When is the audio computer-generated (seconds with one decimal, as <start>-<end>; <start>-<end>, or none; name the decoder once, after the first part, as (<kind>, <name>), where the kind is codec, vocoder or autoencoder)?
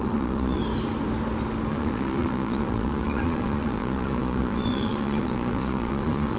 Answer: 0.0-0.6 (vocoder, Vocos); 1.7-6.4